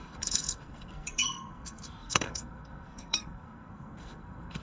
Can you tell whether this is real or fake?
fake